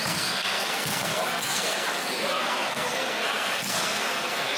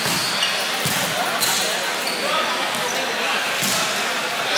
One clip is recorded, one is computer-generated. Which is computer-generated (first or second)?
first